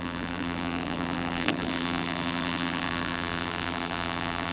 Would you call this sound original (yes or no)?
no